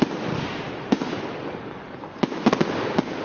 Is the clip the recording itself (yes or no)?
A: yes